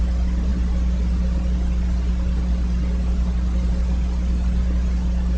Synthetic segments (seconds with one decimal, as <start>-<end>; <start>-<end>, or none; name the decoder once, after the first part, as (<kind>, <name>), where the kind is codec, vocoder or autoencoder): none